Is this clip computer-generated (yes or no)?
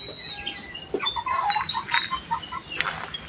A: no